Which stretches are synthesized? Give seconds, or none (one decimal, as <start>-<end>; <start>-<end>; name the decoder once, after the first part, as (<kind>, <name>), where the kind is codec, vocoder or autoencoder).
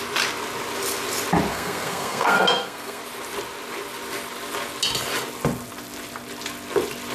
1.5-3.0 (codec, SNAC)